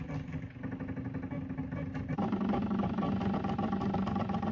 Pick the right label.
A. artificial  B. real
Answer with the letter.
B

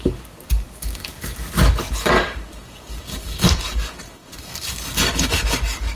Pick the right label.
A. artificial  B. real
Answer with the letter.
A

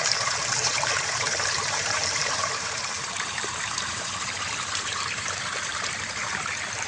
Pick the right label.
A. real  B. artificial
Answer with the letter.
B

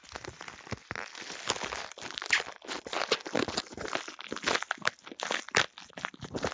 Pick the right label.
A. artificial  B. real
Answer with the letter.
B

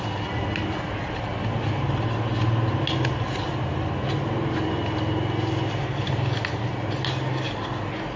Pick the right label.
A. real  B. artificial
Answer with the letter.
A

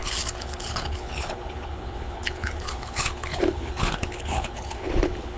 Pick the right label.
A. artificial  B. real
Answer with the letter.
A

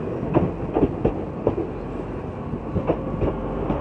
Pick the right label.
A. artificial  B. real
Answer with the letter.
B